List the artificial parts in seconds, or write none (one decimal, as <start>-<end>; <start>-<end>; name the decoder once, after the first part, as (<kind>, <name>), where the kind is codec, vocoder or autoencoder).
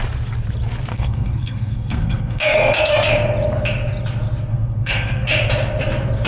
0.9-3.1 (codec, SNAC); 4.5-5.3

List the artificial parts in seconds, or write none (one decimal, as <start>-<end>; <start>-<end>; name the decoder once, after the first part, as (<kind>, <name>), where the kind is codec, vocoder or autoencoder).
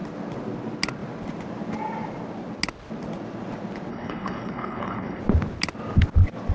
3.9-5.2 (codec, HILCodec)